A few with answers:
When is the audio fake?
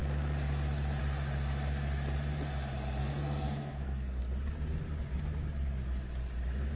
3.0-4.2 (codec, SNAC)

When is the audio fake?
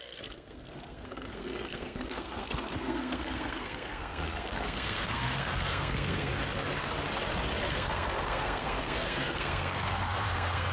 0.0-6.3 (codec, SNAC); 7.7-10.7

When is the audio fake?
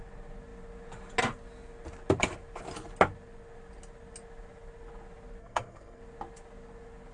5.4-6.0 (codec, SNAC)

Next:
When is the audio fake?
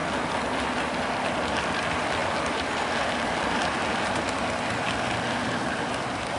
none